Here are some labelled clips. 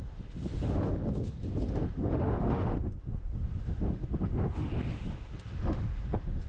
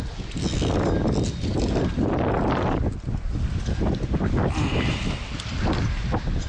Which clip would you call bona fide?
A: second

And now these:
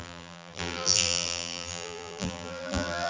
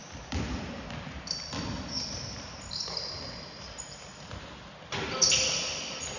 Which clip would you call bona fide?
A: second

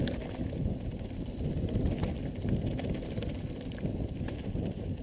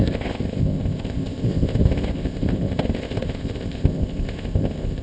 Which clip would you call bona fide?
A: first